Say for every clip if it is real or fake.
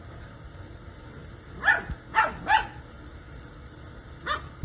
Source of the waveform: real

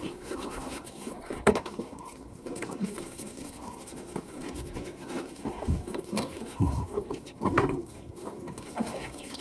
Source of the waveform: fake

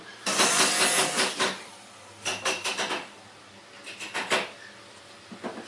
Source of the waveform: real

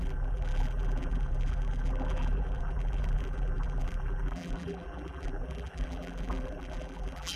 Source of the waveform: fake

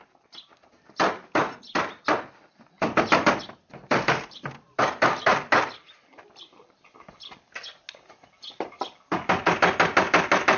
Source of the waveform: real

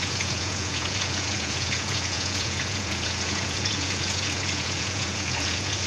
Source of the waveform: fake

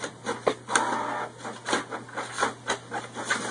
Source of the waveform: real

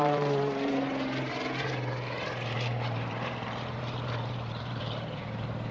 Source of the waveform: fake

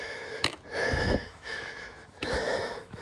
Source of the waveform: fake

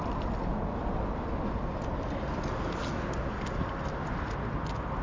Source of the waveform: real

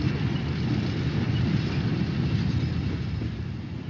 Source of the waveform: real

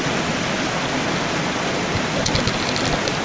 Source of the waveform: real